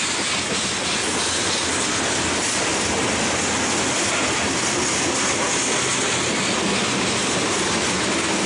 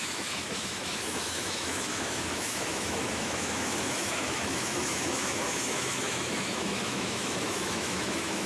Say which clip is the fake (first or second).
second